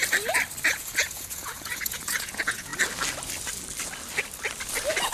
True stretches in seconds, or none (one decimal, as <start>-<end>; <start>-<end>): 0.0-0.7; 2.7-5.1